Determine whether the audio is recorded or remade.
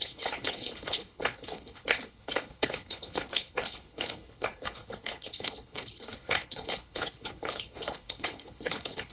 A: remade